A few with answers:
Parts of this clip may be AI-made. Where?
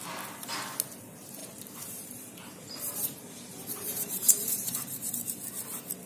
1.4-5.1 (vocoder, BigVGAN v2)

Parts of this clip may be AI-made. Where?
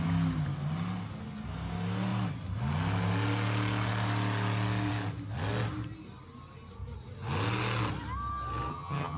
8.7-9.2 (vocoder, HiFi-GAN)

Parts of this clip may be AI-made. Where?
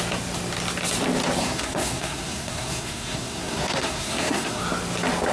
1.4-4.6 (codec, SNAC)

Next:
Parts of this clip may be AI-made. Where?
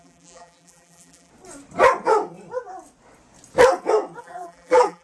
0.0-1.3 (vocoder, BigVGAN v2); 4.2-5.0